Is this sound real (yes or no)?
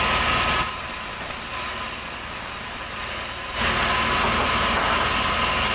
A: yes